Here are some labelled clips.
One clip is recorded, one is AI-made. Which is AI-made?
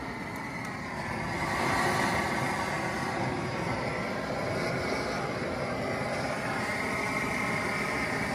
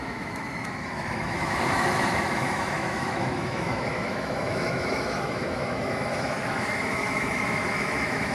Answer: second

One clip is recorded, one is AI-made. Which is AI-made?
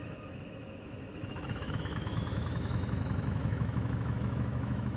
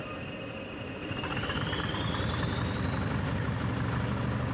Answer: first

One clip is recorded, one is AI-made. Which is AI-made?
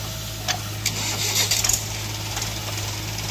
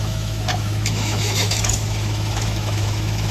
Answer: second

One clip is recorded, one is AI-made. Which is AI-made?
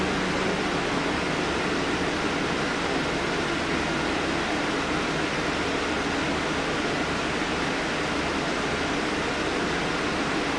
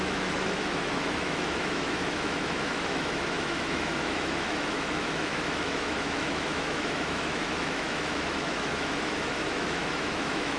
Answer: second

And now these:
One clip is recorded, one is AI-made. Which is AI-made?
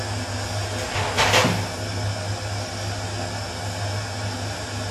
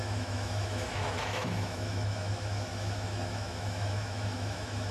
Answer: second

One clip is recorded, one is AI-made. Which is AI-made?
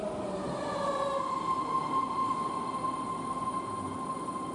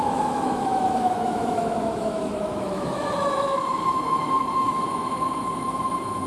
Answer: second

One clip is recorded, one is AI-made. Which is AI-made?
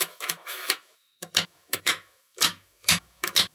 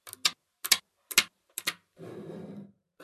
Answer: first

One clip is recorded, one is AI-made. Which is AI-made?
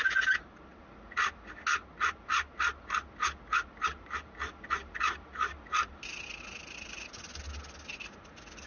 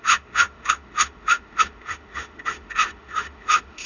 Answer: second